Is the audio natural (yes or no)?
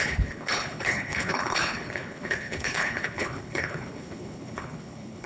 no